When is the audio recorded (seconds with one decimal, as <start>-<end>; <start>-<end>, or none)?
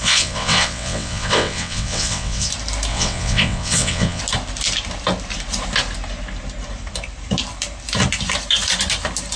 2.5-2.9; 4.2-9.4